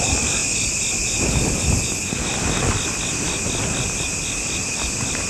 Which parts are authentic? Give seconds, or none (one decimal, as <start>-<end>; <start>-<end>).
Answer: 0.0-5.3